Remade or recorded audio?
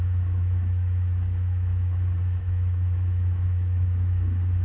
remade